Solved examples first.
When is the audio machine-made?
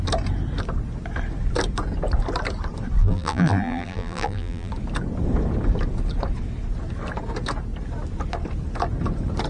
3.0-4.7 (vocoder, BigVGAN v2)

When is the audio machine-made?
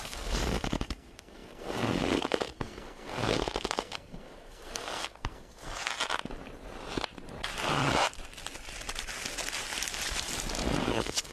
0.0-5.9 (codec, SNAC); 10.8-11.3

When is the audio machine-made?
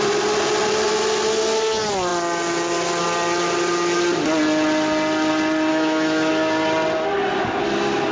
5.7-6.3 (autoencoder, DAC-VAE)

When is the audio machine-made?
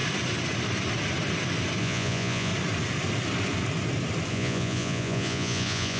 1.8-2.5 (vocoder, Vocos); 4.3-6.0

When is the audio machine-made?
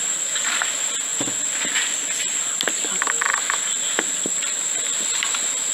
none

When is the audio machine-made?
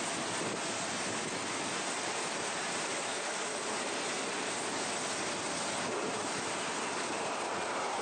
3.1-3.7 (codec, DAC)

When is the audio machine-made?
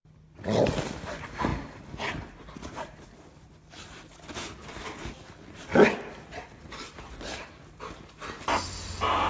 none